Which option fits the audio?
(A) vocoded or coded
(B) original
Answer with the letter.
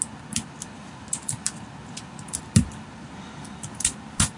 B